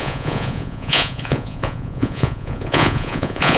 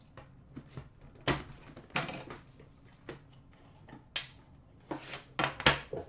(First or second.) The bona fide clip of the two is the second